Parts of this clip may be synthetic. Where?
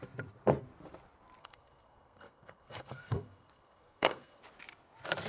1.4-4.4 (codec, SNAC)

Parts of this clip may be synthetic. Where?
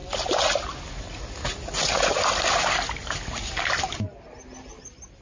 none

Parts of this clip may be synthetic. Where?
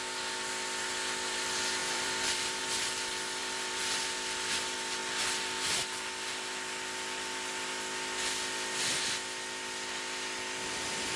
1.8-2.6 (vocoder, BigVGAN v2); 3.4-4.0